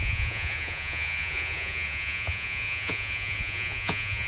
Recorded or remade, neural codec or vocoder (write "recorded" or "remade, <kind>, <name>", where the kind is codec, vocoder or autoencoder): remade, vocoder, Vocos